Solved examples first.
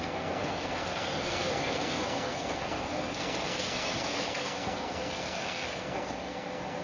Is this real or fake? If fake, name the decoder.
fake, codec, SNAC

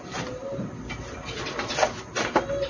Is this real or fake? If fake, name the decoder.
real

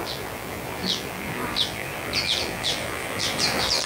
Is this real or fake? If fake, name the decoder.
fake, vocoder, BigVGAN v2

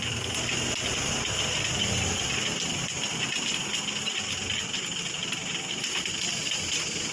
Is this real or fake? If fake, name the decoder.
real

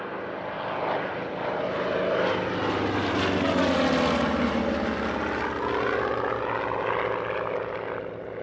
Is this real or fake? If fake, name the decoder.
real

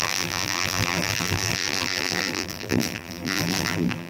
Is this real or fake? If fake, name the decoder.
fake, vocoder, BigVGAN v2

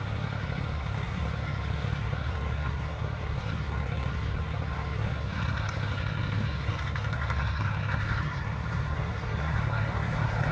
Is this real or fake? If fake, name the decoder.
fake, codec, SNAC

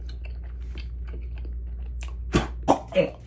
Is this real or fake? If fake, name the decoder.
real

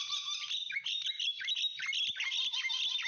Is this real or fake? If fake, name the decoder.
real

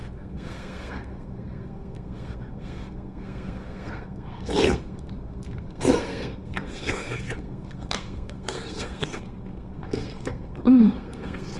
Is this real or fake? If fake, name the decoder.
fake, codec, SNAC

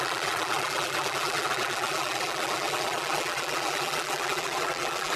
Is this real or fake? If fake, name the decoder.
fake, vocoder, BigVGAN v2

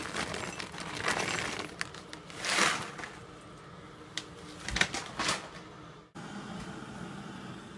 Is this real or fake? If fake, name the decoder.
real